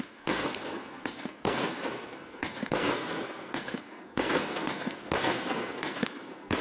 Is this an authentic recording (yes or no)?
no